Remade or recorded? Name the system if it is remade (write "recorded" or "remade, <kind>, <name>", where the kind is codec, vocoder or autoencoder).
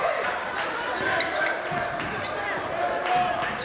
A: remade, vocoder, BigVGAN v2